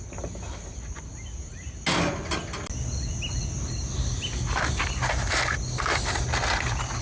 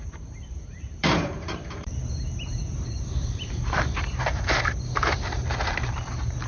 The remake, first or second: second